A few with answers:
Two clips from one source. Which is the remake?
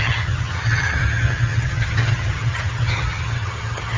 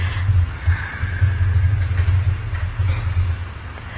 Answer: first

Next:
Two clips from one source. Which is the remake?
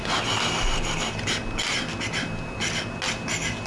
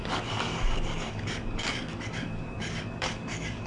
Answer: second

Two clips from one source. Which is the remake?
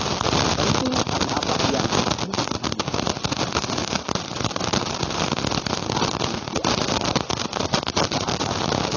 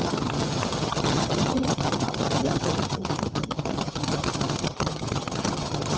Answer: second